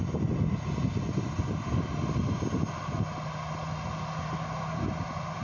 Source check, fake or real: real